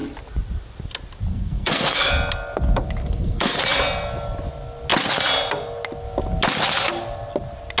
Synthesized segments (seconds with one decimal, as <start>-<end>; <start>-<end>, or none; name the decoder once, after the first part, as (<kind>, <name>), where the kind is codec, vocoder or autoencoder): 1.3-2.1 (codec, SNAC); 3.0-3.6